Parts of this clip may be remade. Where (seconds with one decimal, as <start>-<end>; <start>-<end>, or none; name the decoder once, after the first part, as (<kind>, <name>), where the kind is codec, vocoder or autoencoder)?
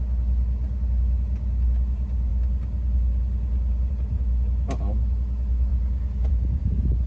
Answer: none